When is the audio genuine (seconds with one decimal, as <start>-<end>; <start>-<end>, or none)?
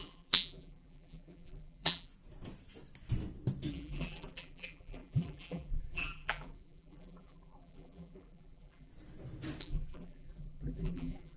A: 2.1-3.7; 8.9-9.6